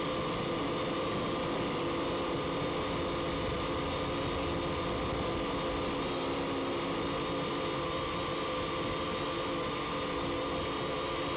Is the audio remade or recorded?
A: recorded